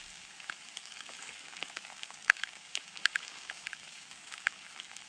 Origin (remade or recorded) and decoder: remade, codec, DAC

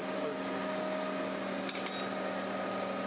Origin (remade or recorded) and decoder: recorded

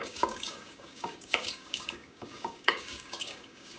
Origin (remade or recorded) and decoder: remade, codec, DAC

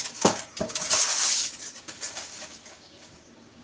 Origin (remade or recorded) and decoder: remade, codec, DAC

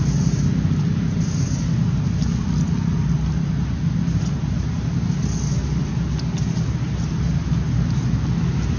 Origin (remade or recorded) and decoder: recorded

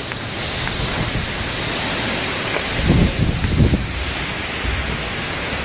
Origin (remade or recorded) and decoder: recorded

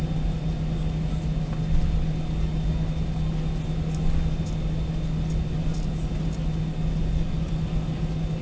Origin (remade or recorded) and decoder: recorded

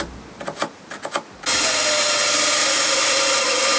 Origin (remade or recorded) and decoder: recorded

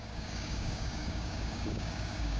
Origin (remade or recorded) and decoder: remade, codec, DAC